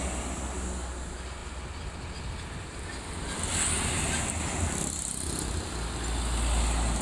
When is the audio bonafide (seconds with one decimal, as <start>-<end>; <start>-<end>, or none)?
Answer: 0.0-7.0